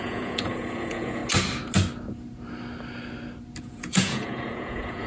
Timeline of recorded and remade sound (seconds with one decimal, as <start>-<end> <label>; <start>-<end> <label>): 0.0-1.2 remade; 1.2-3.6 recorded; 3.6-5.1 remade